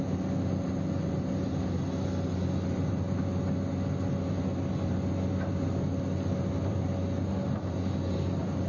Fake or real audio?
real